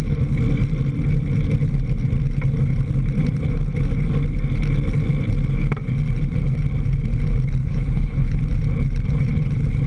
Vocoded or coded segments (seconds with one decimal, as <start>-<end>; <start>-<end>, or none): 7.6-8.4